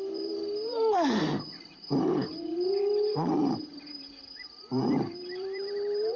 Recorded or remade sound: remade